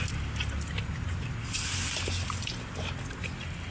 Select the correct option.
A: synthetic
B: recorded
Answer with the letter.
B